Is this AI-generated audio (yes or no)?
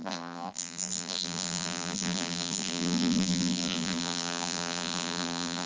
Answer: yes